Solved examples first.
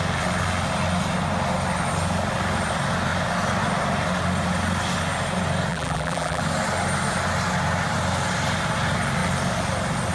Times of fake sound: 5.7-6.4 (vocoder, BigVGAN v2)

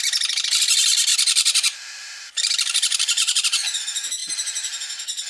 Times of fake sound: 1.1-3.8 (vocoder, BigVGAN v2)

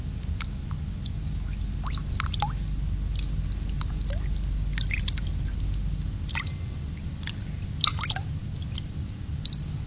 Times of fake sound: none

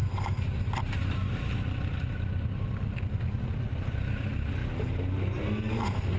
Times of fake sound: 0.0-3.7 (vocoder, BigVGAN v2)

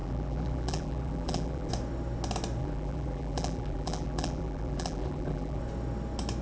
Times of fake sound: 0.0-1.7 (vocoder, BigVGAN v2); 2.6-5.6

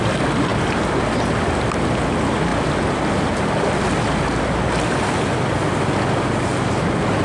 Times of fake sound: 2.5-4.7 (vocoder, BigVGAN v2)

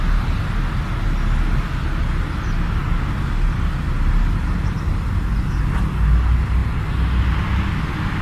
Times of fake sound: none